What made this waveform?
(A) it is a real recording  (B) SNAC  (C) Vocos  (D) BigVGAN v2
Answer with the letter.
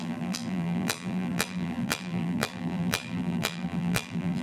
D